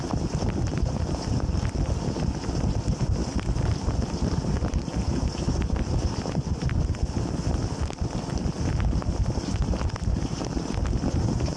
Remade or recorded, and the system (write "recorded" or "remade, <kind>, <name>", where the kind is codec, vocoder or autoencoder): recorded